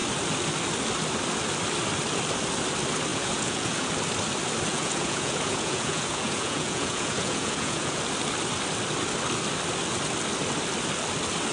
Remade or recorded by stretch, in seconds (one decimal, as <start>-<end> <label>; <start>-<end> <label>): 0.0-3.1 recorded; 3.1-3.9 remade; 3.9-4.7 recorded; 4.7-8.0 remade; 8.0-11.5 recorded